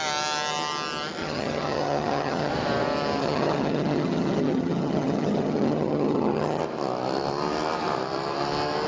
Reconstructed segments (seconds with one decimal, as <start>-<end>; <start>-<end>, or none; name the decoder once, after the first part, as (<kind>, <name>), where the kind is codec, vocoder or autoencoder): 1.2-2.5 (vocoder, HiFi-GAN); 3.2-6.6